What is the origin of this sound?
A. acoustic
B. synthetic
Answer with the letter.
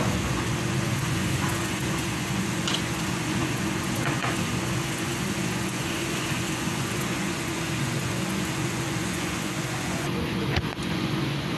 B